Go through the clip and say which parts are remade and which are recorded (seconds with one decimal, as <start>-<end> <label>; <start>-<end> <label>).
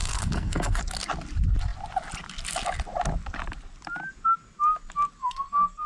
0.0-0.8 remade; 0.8-5.2 recorded; 5.2-5.9 remade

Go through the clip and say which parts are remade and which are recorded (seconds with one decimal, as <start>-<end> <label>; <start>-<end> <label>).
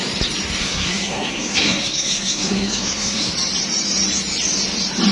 0.0-0.6 recorded; 0.6-3.3 remade; 3.3-5.1 recorded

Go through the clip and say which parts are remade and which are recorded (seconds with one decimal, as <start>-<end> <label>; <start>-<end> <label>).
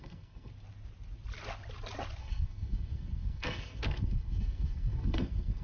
0.0-0.5 remade; 0.5-2.2 recorded; 2.2-5.6 remade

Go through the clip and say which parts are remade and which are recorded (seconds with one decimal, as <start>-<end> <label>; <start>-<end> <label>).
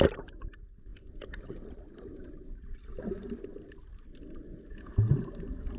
0.0-5.8 recorded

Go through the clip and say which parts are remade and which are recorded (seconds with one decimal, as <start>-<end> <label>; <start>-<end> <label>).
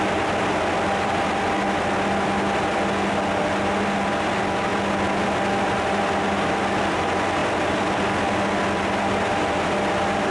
0.0-10.3 recorded